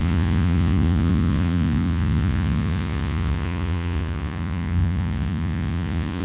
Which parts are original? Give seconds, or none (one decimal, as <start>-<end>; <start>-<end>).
none